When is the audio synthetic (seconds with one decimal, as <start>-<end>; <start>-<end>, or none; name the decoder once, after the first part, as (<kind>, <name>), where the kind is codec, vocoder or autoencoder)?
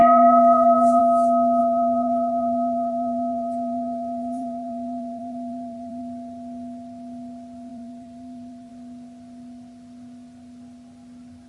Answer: 0.0-1.0 (vocoder, BigVGAN v2); 1.6-6.0; 7.7-8.7